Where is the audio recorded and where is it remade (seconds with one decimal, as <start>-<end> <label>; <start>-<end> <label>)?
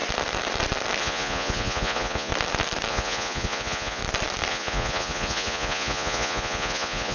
0.0-1.0 recorded; 1.0-2.3 remade; 2.3-2.9 recorded; 2.9-4.0 remade; 4.0-4.5 recorded; 4.5-7.1 remade